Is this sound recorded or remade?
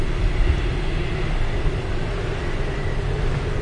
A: recorded